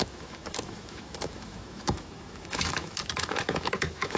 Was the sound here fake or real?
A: fake